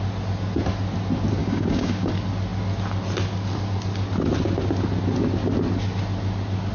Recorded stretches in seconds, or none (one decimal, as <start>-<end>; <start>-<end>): 0.0-1.4; 2.1-6.7